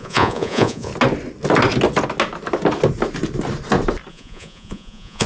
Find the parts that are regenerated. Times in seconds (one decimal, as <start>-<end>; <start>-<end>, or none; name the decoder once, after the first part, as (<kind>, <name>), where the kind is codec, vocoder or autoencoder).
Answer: 0.0-0.9 (vocoder, Vocos); 4.1-5.3